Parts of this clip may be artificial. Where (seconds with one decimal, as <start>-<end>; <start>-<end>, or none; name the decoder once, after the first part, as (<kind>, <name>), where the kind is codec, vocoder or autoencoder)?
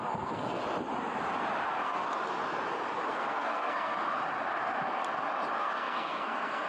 0.0-0.6 (codec, SNAC); 1.7-2.1; 3.1-4.0; 5.6-6.7